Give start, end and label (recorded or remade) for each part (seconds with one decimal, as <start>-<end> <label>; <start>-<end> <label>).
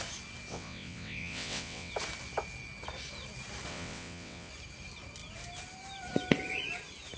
0.0-0.5 recorded; 0.5-1.9 remade; 1.9-3.7 recorded; 3.7-4.5 remade; 4.5-7.2 recorded